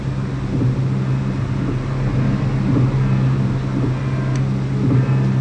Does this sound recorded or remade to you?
recorded